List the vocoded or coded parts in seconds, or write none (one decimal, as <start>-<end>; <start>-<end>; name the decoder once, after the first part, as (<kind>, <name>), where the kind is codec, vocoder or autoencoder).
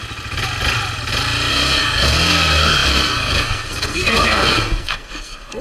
1.5-5.6 (codec, SNAC)